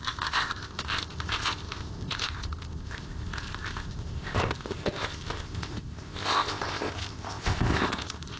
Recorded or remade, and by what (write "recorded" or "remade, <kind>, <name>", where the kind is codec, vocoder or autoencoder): remade, codec, ZipCodec